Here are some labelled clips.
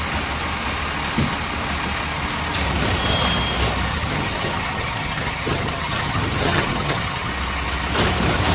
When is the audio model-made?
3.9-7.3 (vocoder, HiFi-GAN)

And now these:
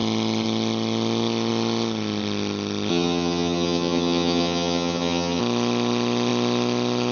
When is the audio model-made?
2.9-5.4 (vocoder, HiFi-GAN)

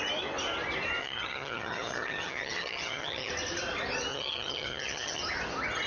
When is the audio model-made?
1.0-3.3 (vocoder, HiFi-GAN); 4.1-5.2

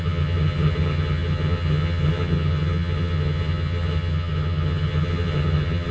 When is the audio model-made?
0.0-5.9 (vocoder, HiFi-GAN)

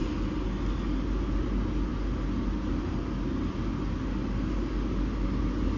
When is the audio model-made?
none

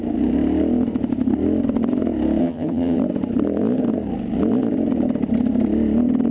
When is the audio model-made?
2.4-3.0 (vocoder, HiFi-GAN)

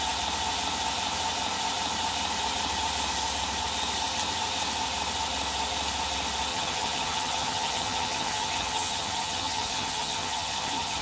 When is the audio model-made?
6.5-11.0 (vocoder, HiFi-GAN)

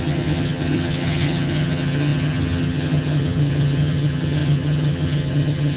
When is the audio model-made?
0.0-5.8 (vocoder, HiFi-GAN)